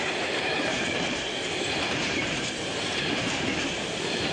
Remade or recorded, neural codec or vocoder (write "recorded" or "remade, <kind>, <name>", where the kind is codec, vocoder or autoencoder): remade, vocoder, BigVGAN v2